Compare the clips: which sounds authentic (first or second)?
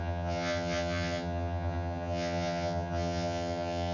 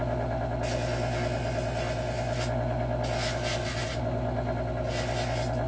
second